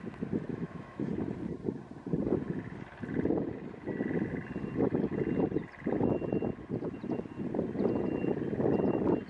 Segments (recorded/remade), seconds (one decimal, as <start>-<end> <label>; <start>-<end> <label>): 0.0-0.5 recorded; 0.5-1.1 remade; 1.1-9.3 recorded